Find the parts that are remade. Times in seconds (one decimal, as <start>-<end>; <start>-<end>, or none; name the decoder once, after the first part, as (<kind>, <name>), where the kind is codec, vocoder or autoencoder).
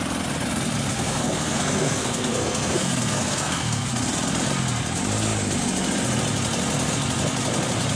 0.9-3.9 (codec, SNAC)